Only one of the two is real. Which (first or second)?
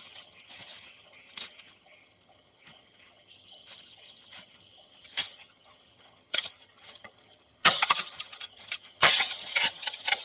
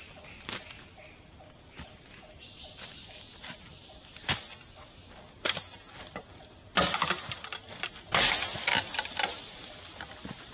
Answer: second